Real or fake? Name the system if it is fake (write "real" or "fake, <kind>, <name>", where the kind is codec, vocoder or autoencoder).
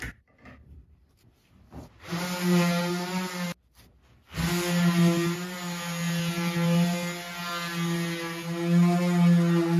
real